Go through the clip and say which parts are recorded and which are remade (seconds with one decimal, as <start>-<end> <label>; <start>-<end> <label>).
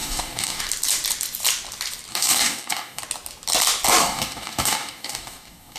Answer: 0.0-0.6 remade; 0.6-2.1 recorded; 2.1-3.0 remade; 3.0-4.0 recorded; 4.0-5.8 remade